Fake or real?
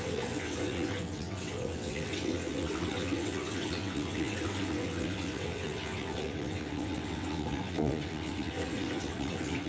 fake